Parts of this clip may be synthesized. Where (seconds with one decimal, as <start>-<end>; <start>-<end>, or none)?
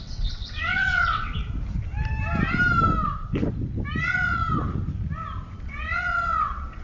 0.0-1.3; 4.0-4.4; 5.6-6.8